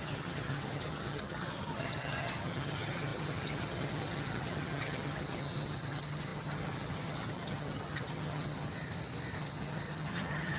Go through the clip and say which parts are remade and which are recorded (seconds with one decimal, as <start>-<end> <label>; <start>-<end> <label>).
0.0-8.7 remade; 8.7-9.4 recorded; 9.4-10.6 remade